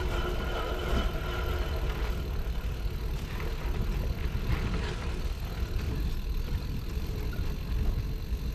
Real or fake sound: real